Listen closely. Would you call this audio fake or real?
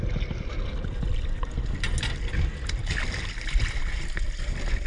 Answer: real